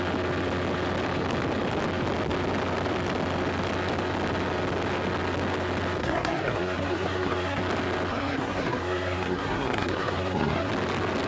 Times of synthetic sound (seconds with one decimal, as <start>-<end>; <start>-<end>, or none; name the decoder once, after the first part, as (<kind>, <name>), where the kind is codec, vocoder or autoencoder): 6.0-7.6 (codec, SNAC); 8.1-10.7